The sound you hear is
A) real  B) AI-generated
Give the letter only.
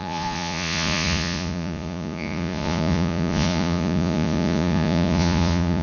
B